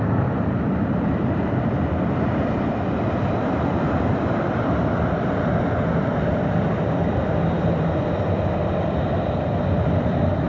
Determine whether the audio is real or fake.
fake